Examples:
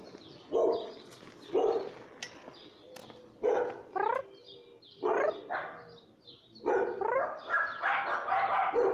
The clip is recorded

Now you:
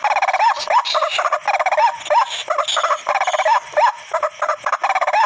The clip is recorded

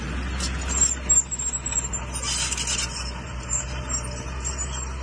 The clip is recorded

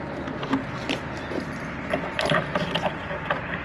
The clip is recorded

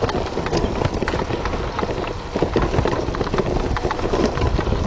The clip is recorded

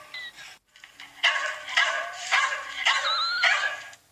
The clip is recorded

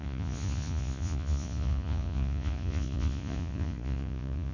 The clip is remade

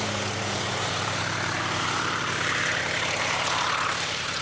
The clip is remade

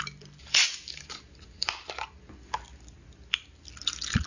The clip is recorded